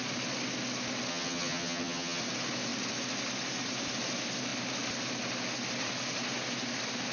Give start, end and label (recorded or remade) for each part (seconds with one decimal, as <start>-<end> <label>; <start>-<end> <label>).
0.0-1.1 recorded; 1.1-2.2 remade; 2.2-7.1 recorded